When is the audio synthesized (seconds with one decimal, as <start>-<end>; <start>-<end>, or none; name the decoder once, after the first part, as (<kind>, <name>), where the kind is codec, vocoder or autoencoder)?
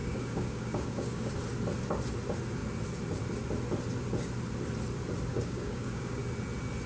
0.0-1.3 (codec, DAC); 5.3-6.2